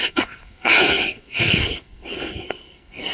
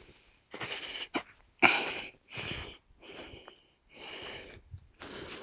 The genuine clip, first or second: second